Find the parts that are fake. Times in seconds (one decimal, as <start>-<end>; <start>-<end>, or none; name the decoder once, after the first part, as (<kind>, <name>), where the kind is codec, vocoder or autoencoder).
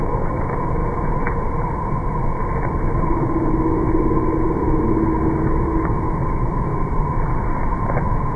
0.0-0.8 (autoencoder, DAC-VAE); 5.4-6.7; 8.0-8.4